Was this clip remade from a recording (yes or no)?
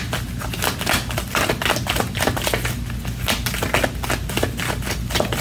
no